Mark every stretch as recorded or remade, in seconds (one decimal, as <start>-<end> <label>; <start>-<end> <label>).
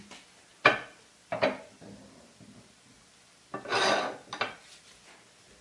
0.0-5.6 recorded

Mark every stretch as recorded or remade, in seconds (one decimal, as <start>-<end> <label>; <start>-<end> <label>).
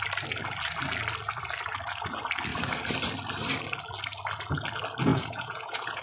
0.0-5.1 recorded; 5.1-6.0 remade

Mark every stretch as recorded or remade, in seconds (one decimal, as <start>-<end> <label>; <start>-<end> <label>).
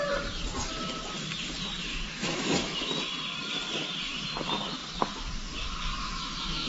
0.0-1.8 recorded; 1.8-2.9 remade; 2.9-6.0 recorded; 6.0-6.7 remade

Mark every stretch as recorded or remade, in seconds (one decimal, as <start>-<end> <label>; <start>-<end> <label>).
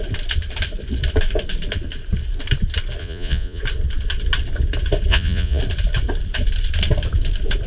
0.0-3.0 recorded; 3.0-3.6 remade; 3.6-5.1 recorded; 5.1-5.6 remade; 5.6-7.7 recorded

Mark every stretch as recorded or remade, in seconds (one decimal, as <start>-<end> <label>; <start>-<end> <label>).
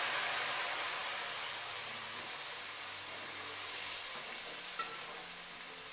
0.0-5.9 recorded